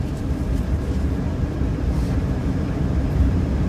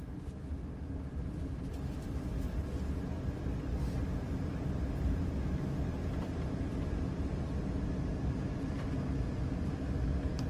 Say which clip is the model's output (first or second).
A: first